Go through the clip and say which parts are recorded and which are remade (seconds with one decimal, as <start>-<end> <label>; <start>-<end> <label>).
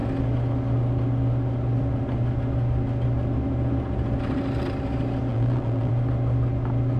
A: 0.0-5.3 recorded; 5.3-5.9 remade; 5.9-7.0 recorded